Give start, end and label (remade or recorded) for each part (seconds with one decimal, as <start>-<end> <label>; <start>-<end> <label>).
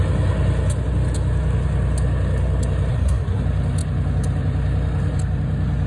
0.0-2.9 recorded; 2.9-3.4 remade; 3.4-5.9 recorded